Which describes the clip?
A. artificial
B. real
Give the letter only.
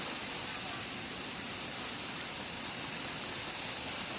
B